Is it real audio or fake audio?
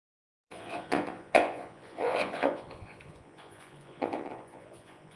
fake